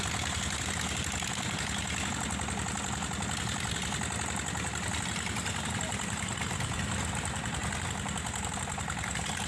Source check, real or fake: real